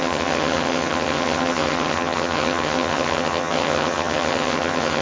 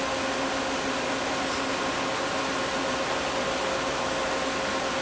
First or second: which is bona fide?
second